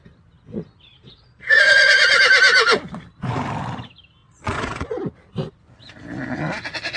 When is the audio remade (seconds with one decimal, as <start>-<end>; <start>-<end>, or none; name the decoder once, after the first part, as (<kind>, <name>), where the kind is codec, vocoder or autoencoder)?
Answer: 0.9-2.2 (vocoder, Vocos); 4.2-5.0